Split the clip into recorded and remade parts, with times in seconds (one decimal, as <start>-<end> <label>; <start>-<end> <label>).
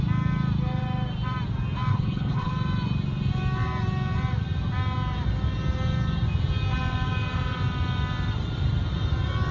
0.0-1.9 recorded; 1.9-2.5 remade; 2.5-9.5 recorded